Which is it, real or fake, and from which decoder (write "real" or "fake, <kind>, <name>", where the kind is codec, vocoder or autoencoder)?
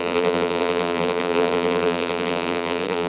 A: fake, vocoder, BigVGAN v2